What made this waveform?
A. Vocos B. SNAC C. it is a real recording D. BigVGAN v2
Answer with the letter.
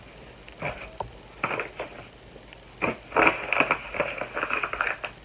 C